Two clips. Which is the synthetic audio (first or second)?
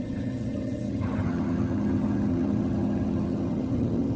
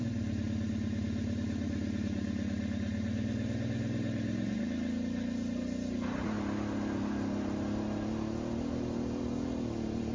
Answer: first